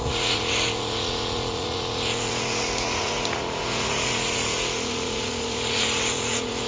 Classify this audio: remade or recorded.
remade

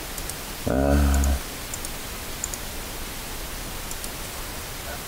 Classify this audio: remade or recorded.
recorded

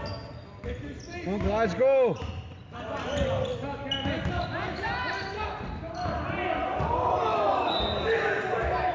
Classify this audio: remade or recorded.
recorded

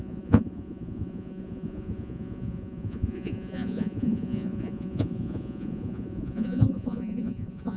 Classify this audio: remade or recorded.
remade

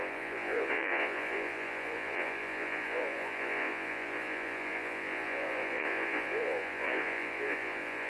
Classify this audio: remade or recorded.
remade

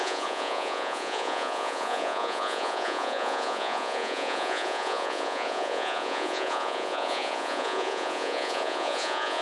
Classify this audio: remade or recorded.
remade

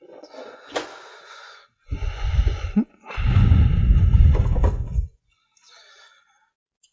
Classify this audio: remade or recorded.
remade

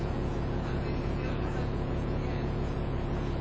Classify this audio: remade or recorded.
remade